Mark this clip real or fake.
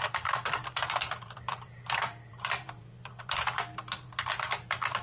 fake